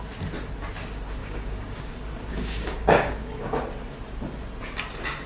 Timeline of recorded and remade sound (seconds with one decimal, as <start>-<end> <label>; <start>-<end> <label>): 0.0-1.2 recorded; 1.2-1.9 remade; 1.9-2.3 recorded; 2.3-3.6 remade; 3.6-5.3 recorded